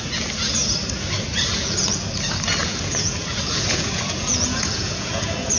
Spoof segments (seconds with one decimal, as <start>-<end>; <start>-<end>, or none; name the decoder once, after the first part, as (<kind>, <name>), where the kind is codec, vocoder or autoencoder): 1.6-2.2 (vocoder, Vocos); 2.6-5.6